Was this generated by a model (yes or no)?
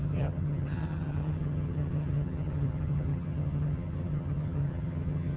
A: yes